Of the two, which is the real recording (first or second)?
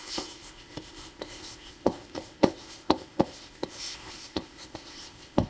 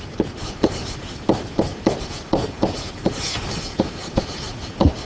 second